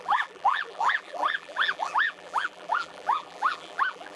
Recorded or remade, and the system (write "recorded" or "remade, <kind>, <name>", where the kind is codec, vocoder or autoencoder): remade, vocoder, BigVGAN v2